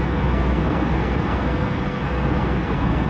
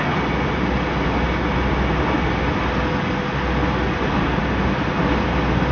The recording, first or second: second